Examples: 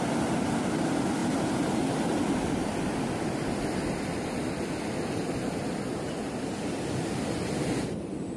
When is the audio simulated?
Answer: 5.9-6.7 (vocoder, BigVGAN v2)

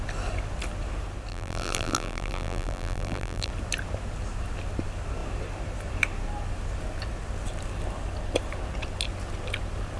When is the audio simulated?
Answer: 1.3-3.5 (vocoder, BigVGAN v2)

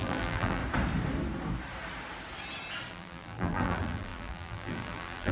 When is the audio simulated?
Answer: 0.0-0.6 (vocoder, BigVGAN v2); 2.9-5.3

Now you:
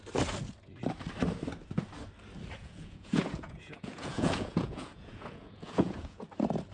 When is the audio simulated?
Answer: 2.6-6.2 (vocoder, Vocos)